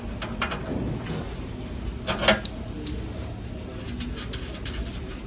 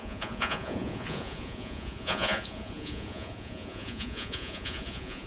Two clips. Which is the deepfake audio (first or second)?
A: second